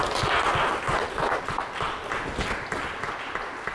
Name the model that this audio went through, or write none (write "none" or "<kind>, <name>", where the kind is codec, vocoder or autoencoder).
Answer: none